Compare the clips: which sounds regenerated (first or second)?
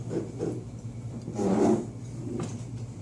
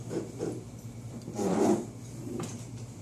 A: second